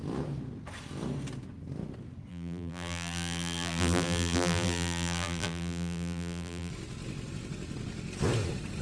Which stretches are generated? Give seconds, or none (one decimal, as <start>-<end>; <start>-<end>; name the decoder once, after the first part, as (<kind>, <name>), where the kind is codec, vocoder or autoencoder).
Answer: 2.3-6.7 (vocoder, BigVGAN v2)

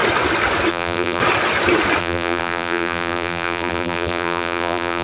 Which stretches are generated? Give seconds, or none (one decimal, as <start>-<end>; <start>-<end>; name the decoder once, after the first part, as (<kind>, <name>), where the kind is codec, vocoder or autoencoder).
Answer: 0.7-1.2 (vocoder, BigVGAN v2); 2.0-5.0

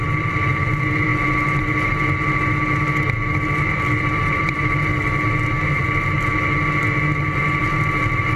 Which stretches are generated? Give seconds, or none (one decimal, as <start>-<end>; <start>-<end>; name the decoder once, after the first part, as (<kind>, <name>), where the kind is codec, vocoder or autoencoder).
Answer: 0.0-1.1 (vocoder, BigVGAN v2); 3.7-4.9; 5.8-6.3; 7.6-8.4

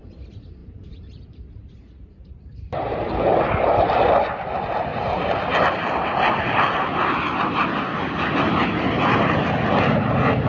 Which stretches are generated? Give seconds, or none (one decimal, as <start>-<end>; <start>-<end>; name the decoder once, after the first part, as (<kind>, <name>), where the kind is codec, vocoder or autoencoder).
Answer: 0.6-3.4 (vocoder, BigVGAN v2)

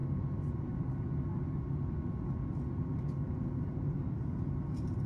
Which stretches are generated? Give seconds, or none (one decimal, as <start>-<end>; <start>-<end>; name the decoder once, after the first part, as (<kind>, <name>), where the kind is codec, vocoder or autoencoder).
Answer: none